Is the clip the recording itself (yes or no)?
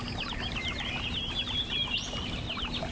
yes